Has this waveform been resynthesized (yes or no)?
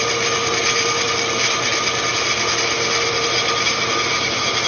no